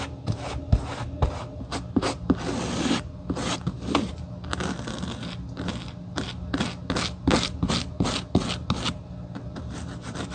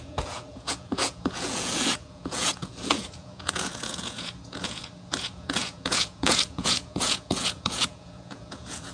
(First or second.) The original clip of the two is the first